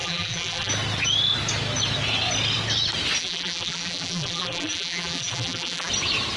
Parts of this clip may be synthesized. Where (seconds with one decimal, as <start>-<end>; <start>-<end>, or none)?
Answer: 0.0-0.7; 3.2-5.9

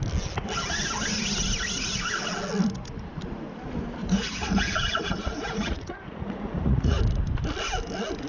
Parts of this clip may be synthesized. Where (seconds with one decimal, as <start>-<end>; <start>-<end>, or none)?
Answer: 4.0-7.0

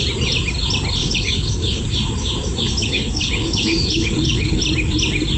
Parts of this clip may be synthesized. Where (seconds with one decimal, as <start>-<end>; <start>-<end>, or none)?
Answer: 1.0-1.8; 2.8-4.6

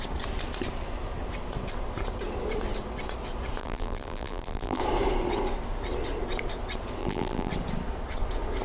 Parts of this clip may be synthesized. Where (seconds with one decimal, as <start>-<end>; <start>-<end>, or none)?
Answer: 3.6-4.8; 7.0-7.5

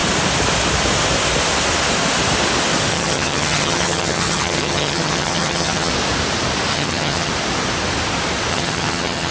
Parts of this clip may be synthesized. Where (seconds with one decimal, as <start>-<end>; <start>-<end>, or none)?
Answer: 2.9-5.9; 6.7-7.3; 8.5-9.3